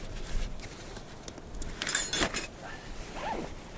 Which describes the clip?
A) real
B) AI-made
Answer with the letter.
A